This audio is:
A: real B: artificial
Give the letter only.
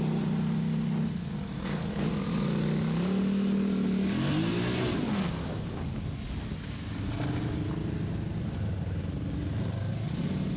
A